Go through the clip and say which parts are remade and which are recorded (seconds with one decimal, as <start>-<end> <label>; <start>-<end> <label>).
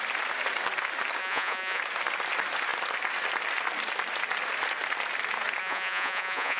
0.0-1.2 recorded; 1.2-1.8 remade; 1.8-5.6 recorded; 5.6-6.6 remade